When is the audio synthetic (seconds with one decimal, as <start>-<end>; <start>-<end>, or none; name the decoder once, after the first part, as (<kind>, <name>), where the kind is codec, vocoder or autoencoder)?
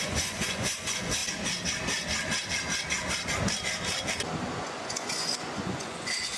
0.0-1.2 (vocoder, Vocos); 4.5-6.4